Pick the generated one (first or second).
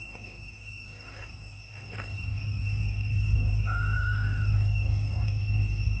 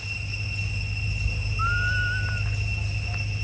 first